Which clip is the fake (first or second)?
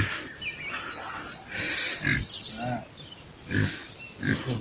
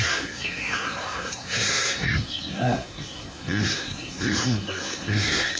second